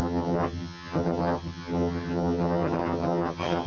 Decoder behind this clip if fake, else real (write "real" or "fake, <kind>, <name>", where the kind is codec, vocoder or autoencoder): fake, vocoder, HiFi-GAN